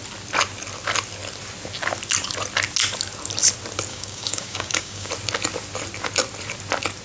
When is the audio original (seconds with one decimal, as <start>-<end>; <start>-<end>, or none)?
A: 0.0-3.9; 5.1-7.0